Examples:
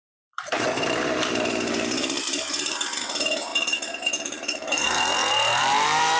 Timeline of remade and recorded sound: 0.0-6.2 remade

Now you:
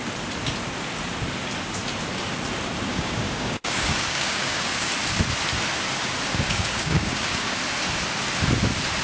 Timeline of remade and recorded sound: 0.0-2.9 recorded; 2.9-4.9 remade; 4.9-6.3 recorded; 6.3-7.6 remade; 7.6-9.0 recorded

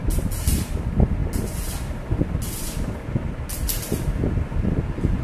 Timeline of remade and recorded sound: 0.0-5.2 recorded

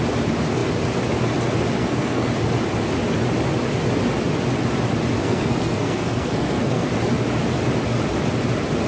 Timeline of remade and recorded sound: 0.0-1.8 recorded; 1.8-2.3 remade; 2.3-5.2 recorded; 5.2-6.9 remade; 6.9-8.9 recorded